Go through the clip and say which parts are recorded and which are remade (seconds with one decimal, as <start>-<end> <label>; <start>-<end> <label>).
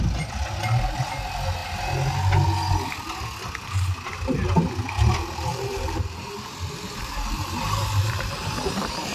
0.0-5.5 recorded; 5.5-9.1 remade